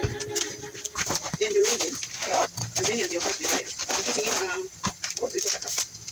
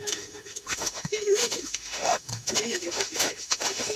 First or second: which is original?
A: first